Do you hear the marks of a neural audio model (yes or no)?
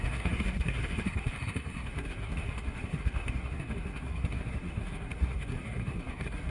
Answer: yes